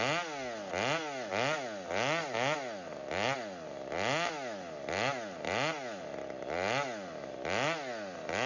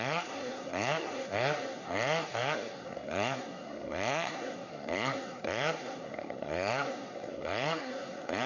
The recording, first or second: first